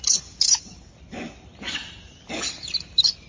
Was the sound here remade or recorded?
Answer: recorded